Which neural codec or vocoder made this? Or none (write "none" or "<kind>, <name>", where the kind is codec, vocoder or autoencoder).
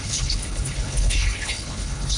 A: codec, HILCodec